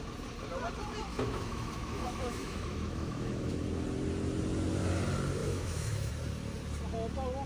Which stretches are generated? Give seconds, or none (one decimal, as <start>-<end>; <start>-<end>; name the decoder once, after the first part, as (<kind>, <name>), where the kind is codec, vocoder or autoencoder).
1.1-3.5 (autoencoder, DAC-VAE); 5.4-6.1